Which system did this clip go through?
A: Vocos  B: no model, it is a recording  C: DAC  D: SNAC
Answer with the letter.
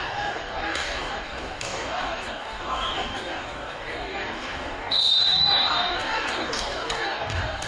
C